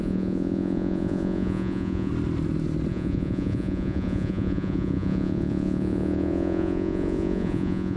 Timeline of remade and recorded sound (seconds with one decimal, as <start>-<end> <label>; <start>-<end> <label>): 0.0-2.1 remade; 2.1-2.9 recorded; 2.9-8.0 remade